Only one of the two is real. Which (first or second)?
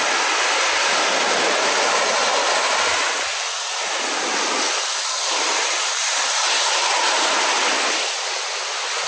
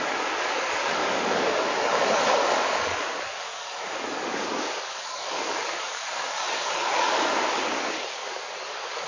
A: first